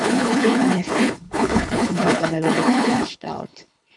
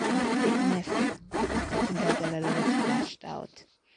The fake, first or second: first